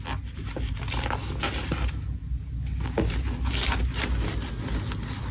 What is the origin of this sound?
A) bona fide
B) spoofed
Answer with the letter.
A